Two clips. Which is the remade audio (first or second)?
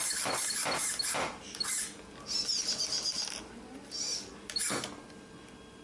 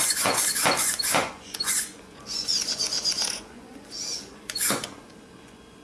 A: second